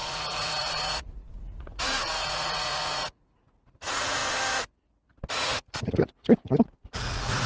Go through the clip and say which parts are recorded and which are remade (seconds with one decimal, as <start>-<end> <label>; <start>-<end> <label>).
0.0-4.2 remade; 4.2-5.3 recorded; 5.3-7.5 remade